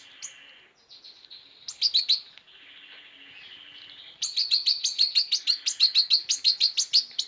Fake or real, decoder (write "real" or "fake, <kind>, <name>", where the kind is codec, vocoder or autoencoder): real